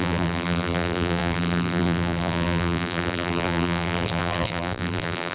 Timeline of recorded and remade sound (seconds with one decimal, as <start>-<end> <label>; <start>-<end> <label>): 0.0-5.3 remade